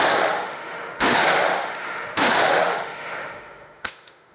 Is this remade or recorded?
remade